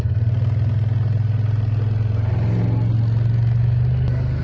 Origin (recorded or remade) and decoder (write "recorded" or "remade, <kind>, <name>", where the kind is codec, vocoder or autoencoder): recorded